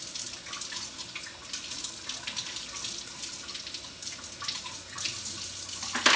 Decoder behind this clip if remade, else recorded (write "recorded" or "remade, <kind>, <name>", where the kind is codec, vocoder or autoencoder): recorded